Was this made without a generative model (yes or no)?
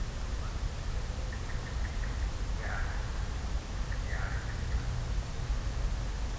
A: yes